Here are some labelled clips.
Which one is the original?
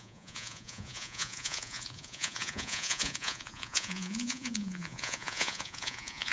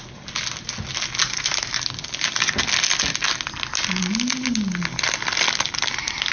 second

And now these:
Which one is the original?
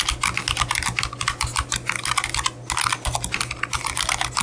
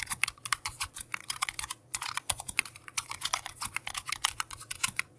first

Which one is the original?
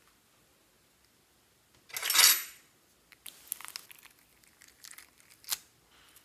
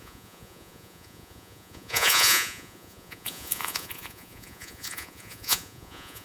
first